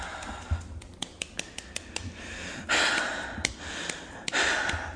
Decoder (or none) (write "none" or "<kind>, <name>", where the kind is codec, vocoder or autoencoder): none